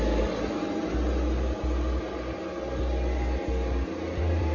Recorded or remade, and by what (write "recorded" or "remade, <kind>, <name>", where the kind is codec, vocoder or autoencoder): recorded